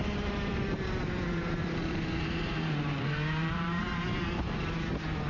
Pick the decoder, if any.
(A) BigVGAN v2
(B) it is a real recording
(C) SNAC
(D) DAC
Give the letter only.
A